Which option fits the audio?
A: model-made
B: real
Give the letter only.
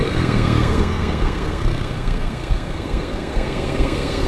A